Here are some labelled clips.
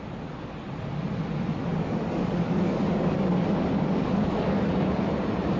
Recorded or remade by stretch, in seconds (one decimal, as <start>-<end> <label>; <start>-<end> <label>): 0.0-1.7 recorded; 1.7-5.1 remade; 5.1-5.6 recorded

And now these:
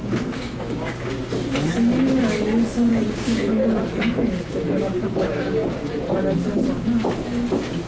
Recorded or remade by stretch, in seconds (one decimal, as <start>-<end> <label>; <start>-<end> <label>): 0.0-1.3 remade; 1.3-2.9 recorded; 2.9-3.8 remade; 3.8-4.2 recorded; 4.2-5.9 remade; 5.9-7.9 recorded

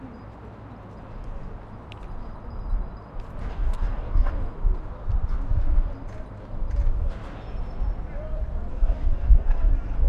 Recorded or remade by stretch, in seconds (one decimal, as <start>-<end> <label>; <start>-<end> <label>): 0.0-3.5 recorded; 3.5-4.3 remade; 4.3-8.7 recorded; 8.7-9.7 remade; 9.7-10.1 recorded